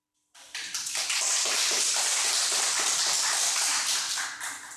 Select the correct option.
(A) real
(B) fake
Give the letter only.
A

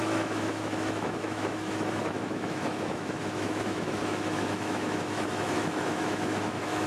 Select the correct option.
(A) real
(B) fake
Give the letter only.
B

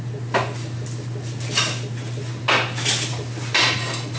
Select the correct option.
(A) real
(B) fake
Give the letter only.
A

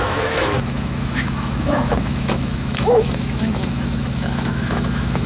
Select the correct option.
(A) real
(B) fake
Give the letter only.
B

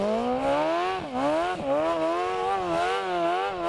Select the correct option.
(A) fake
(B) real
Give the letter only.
B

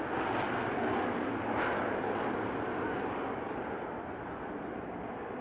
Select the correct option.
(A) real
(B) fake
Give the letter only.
A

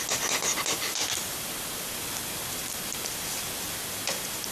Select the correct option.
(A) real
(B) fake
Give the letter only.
A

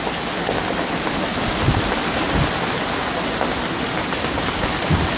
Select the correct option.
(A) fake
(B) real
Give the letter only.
B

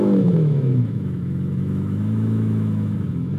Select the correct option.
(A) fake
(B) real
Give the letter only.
A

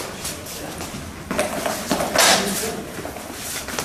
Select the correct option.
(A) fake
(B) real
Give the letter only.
B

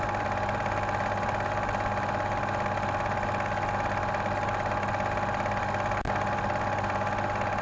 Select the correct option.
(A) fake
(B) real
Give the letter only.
B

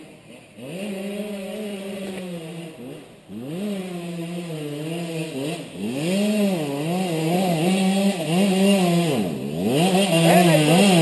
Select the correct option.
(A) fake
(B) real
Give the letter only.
B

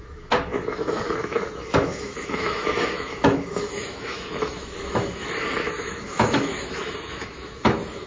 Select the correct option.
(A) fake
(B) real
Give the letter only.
A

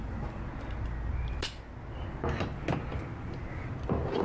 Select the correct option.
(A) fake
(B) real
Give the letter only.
B